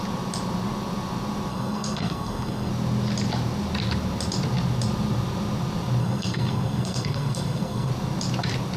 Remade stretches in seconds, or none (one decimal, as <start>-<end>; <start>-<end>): 1.5-2.7; 6.0-7.9